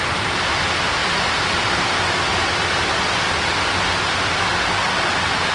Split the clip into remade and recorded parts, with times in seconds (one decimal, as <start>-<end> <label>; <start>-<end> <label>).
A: 0.0-5.5 recorded